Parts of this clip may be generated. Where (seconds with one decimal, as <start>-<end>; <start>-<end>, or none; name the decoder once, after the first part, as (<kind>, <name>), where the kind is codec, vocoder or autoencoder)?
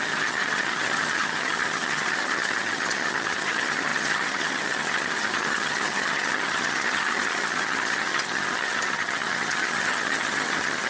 0.0-10.9 (vocoder, HiFi-GAN)